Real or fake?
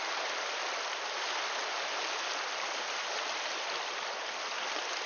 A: real